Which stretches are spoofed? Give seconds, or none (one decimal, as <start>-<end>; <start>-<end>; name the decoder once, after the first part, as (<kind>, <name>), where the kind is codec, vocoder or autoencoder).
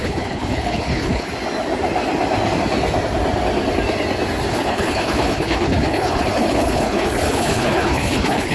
0.0-1.3 (codec, HILCodec); 4.5-8.5